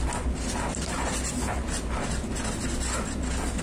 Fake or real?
real